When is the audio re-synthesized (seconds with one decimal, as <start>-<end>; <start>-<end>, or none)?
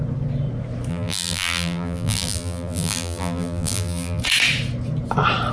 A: 0.9-4.2